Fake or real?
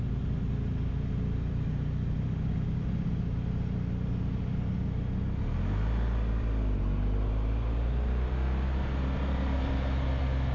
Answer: real